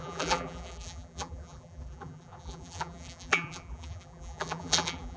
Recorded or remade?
remade